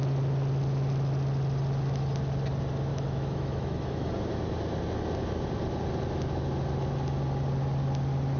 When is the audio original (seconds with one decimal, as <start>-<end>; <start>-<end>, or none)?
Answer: 0.0-2.9; 4.1-8.4